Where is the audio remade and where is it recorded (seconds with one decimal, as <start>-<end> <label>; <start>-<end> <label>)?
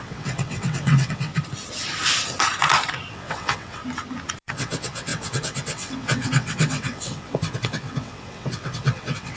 0.0-1.3 remade; 1.3-3.1 recorded; 3.1-3.8 remade; 3.8-4.4 recorded; 4.4-9.4 remade